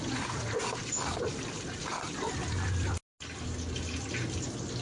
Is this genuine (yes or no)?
yes